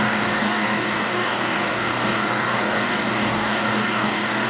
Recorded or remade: remade